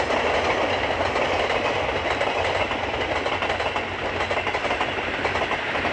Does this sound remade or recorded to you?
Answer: recorded